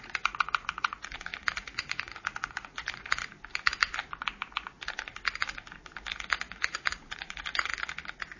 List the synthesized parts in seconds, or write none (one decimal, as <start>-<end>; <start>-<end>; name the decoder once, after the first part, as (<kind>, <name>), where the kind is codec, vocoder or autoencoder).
0.0-3.2 (vocoder, Vocos); 6.1-7.7